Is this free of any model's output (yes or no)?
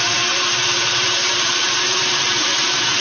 no